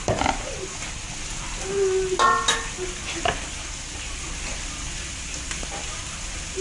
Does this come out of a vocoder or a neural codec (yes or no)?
no